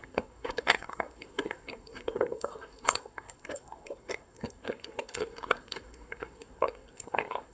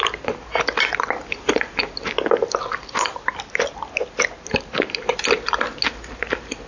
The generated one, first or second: first